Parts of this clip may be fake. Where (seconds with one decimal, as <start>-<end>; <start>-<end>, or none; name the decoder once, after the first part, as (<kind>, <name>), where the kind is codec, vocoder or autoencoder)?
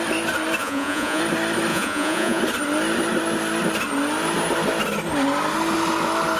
0.6-1.2 (vocoder, Vocos); 1.7-2.4